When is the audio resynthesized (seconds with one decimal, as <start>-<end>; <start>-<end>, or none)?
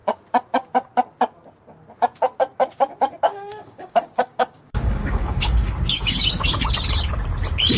3.3-6.2